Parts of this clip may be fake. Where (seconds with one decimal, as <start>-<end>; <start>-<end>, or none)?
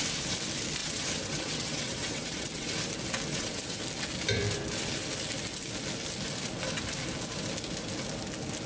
0.8-2.7; 3.3-3.8